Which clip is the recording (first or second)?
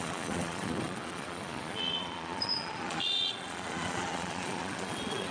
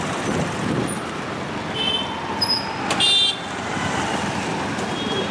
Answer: second